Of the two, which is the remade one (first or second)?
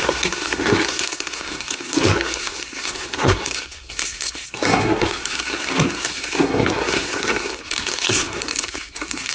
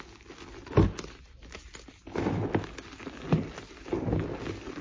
first